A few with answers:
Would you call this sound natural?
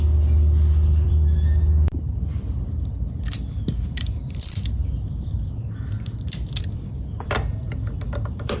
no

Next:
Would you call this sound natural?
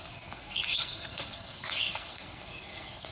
no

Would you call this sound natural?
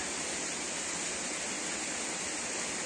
yes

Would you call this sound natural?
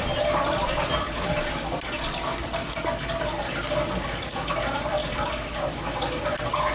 yes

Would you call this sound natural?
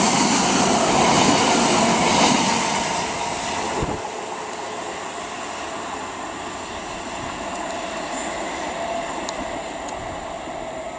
yes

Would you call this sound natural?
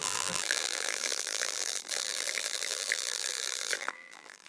no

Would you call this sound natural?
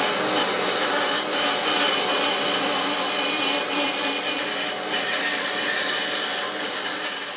yes